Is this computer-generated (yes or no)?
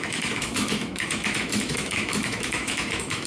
yes